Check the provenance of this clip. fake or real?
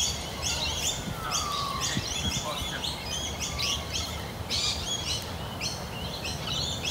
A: fake